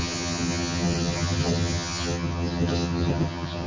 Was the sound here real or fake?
fake